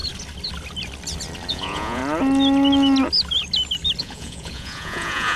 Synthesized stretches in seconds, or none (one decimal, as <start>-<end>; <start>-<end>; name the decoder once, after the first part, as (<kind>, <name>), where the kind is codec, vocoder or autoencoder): 1.5-2.0 (vocoder, Vocos); 4.0-5.4